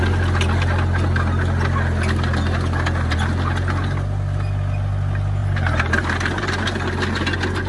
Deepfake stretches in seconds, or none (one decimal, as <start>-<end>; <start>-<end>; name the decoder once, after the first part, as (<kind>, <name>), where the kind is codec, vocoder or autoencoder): 5.4-6.5 (vocoder, BigVGAN v2)